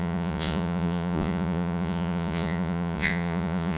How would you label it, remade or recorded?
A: remade